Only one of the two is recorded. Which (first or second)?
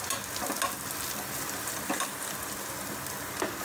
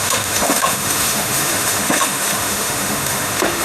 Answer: first